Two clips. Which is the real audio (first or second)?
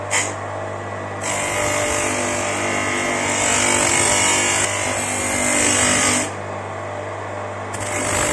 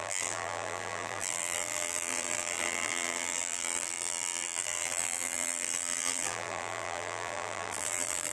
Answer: first